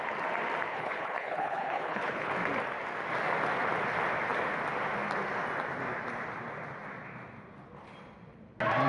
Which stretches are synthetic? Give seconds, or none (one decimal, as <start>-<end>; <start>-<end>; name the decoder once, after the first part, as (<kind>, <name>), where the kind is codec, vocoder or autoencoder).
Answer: 0.7-2.3 (codec, HILCodec)